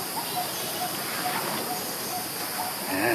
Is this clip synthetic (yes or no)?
no